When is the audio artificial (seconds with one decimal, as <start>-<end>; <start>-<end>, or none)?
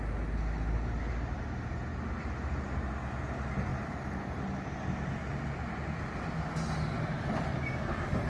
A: none